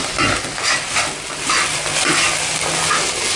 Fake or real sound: real